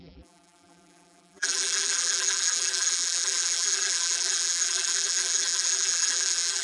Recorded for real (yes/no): no